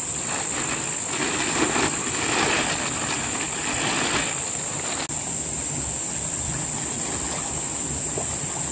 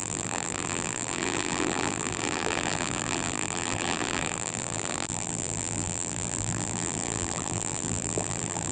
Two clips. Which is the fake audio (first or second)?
second